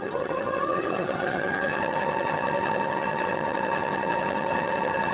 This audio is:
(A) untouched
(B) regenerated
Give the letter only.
B